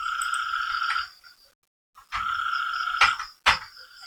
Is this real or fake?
real